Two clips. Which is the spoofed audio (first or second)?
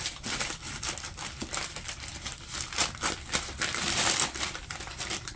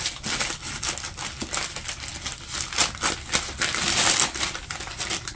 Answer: first